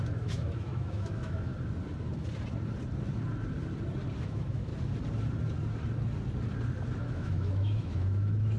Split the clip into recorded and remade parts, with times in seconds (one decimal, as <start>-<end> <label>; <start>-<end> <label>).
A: 0.0-1.5 remade; 1.5-4.2 recorded; 4.2-4.7 remade; 4.7-7.0 recorded; 7.0-8.6 remade